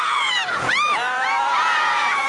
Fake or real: fake